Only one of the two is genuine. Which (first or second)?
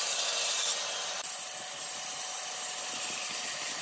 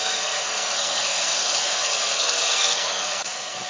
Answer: first